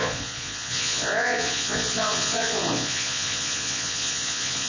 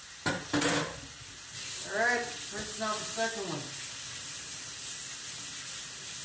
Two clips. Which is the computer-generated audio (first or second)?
first